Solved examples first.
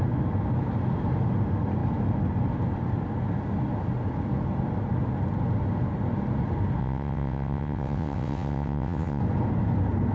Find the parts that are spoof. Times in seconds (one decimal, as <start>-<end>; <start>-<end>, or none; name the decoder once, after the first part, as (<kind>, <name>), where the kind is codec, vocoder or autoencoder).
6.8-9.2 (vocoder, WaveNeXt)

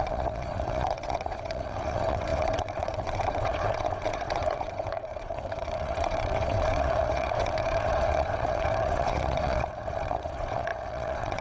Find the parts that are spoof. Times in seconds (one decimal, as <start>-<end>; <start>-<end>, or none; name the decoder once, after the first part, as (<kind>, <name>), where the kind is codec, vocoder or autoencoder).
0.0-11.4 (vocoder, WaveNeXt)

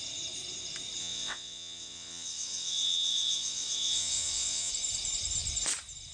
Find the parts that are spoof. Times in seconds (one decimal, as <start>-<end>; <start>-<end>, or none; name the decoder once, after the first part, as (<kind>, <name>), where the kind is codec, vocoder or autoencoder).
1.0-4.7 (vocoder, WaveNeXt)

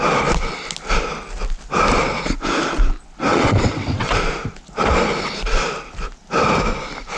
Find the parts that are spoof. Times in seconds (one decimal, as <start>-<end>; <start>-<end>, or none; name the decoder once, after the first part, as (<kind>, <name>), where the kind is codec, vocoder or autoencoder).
3.3-4.1 (vocoder, WaveNeXt)

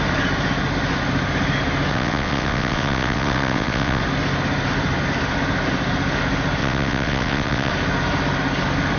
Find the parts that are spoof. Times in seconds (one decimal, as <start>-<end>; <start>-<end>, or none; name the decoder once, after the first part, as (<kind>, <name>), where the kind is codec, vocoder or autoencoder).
1.9-4.0 (vocoder, WaveNeXt); 6.6-7.7

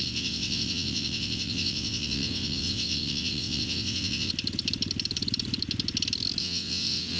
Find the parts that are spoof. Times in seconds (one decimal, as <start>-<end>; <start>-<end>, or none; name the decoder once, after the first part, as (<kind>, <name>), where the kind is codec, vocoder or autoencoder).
0.0-4.3 (vocoder, WaveNeXt); 6.4-7.2

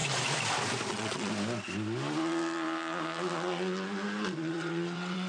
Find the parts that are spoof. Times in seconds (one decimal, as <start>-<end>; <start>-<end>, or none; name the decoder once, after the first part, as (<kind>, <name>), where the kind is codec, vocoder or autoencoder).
0.9-1.3 (vocoder, WaveNeXt); 4.5-5.3